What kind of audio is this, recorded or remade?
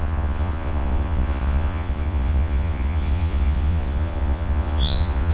remade